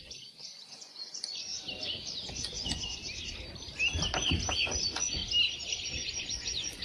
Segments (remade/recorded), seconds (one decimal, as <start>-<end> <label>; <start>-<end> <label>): 0.0-1.5 remade; 1.5-2.3 recorded; 2.3-3.0 remade; 3.0-4.7 recorded; 4.7-5.2 remade; 5.2-5.9 recorded; 5.9-6.8 remade